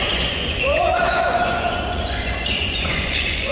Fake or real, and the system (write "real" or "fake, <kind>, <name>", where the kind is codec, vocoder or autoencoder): fake, vocoder, Vocos